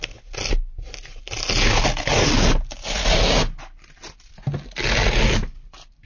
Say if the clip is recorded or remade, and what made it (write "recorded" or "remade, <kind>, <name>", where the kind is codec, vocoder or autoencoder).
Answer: recorded